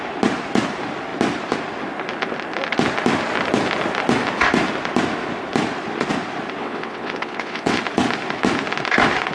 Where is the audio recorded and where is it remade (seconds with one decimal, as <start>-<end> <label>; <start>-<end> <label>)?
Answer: 0.0-6.6 recorded; 6.6-7.8 remade; 7.8-9.3 recorded